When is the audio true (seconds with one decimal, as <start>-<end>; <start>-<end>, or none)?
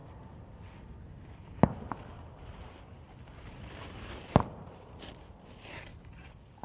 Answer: 0.0-5.9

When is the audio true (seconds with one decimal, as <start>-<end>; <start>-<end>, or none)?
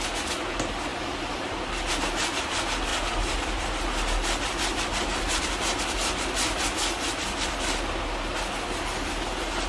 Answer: 0.0-9.7